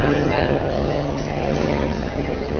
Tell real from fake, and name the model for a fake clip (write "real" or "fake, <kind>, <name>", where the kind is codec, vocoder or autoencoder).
fake, vocoder, HiFi-GAN